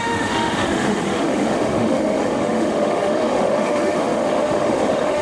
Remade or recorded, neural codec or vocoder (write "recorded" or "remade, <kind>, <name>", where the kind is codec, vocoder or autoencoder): remade, autoencoder, DAC-VAE